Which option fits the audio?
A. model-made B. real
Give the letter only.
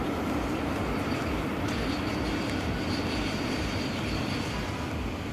B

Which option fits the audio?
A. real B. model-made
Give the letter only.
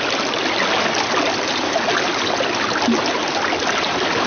A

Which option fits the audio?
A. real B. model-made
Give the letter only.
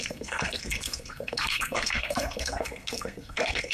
B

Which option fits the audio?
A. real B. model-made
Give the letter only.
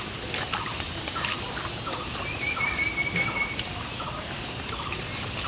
A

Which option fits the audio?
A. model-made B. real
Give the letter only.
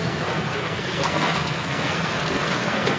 A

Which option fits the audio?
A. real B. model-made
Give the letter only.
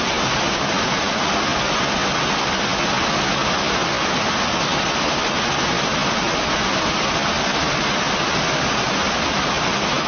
A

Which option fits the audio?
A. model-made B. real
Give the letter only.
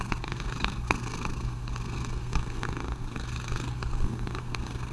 A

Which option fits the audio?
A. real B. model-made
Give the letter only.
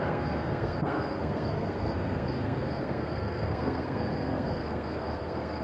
B